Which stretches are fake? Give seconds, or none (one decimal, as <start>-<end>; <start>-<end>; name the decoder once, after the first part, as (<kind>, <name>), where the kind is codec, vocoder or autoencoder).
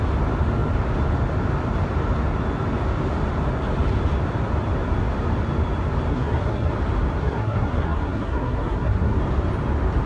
6.1-6.7 (codec, SNAC); 7.2-9.2